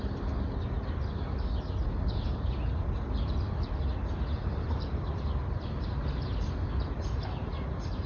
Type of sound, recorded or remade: recorded